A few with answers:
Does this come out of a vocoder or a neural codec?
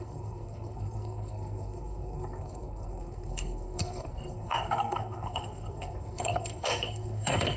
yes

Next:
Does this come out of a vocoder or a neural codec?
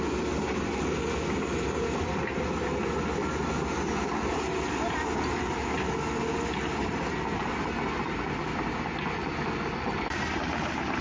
no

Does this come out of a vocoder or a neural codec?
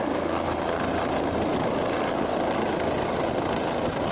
no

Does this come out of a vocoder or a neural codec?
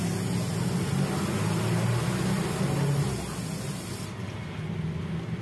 no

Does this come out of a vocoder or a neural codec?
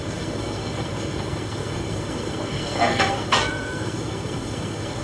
yes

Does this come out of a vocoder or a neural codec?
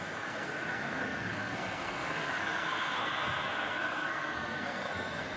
yes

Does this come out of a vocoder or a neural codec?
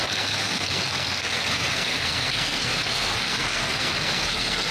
yes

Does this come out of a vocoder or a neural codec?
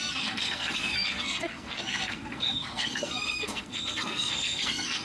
yes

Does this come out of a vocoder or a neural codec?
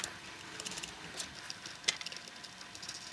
no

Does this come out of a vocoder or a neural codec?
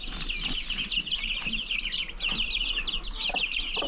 no